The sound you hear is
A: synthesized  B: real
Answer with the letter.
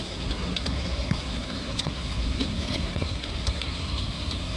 A